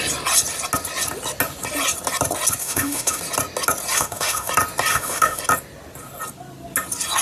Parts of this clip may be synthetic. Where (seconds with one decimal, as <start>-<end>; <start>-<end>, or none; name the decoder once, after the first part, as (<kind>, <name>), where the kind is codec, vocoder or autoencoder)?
2.6-3.2 (autoencoder, DAC-VAE); 3.9-4.5; 4.9-5.4